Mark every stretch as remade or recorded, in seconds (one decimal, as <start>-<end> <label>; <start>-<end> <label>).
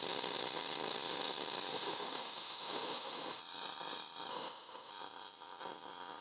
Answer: 0.0-1.7 recorded; 1.7-3.4 remade; 3.4-4.3 recorded; 4.3-4.9 remade; 4.9-6.2 recorded